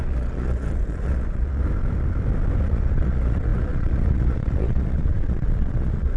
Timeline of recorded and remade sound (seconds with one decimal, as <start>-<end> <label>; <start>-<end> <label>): 0.0-1.6 remade; 1.6-2.7 recorded; 2.7-6.2 remade